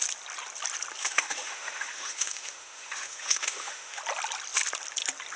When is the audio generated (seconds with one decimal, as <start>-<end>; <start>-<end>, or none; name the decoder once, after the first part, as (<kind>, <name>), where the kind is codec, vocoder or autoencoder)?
1.0-4.0 (autoencoder, DAC-VAE)